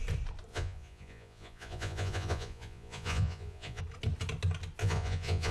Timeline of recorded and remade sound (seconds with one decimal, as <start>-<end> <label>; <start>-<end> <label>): 0.0-0.5 recorded; 0.5-3.8 remade; 3.8-4.8 recorded; 4.8-5.5 remade